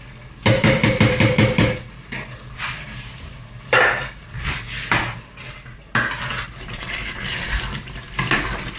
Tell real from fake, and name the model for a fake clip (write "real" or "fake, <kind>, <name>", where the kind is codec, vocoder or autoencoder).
real